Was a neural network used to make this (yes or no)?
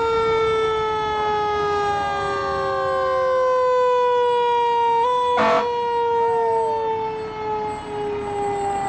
no